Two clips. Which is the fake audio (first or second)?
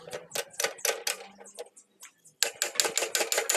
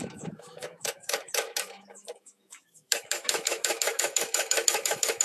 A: second